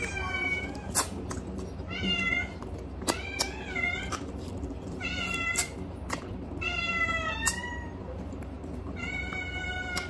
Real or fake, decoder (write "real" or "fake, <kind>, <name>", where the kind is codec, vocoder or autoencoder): real